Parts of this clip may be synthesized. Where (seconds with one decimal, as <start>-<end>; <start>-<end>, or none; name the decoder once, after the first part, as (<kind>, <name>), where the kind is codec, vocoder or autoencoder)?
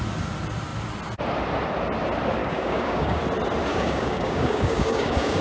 2.4-3.2 (codec, DAC); 3.7-5.4